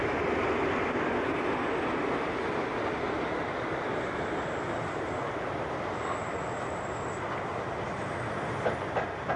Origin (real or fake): real